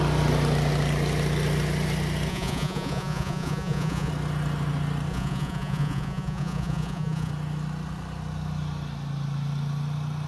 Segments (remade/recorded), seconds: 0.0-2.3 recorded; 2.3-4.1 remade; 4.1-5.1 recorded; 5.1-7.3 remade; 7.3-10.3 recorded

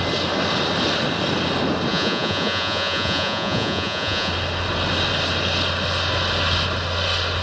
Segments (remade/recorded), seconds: 0.0-1.9 recorded; 1.9-4.3 remade; 4.3-7.4 recorded

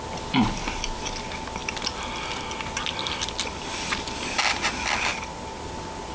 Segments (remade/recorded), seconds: 0.0-6.1 recorded

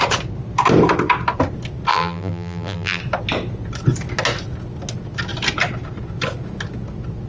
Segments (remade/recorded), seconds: 0.0-1.9 recorded; 1.9-3.0 remade; 3.0-7.3 recorded